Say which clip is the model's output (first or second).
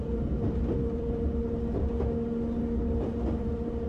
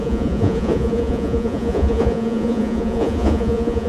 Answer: second